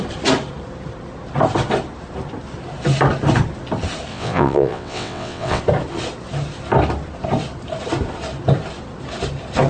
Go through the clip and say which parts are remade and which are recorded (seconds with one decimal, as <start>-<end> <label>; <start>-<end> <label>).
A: 0.0-4.1 recorded; 4.1-5.6 remade; 5.6-9.7 recorded